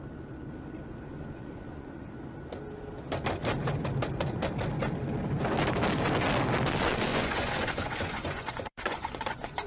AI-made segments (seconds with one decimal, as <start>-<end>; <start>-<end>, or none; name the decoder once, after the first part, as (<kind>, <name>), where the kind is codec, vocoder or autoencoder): 1.1-2.1 (vocoder, Vocos); 7.1-9.7